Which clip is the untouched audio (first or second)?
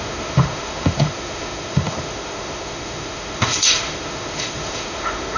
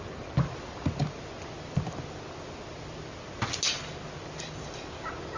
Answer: second